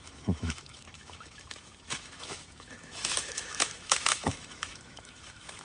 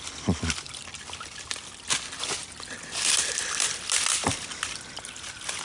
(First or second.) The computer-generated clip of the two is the first